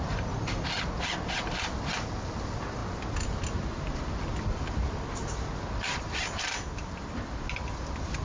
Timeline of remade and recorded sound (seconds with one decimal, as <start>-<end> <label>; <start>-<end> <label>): 0.0-8.2 recorded